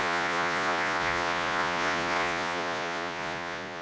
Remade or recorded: remade